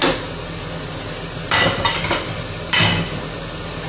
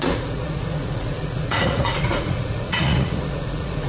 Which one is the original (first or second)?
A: first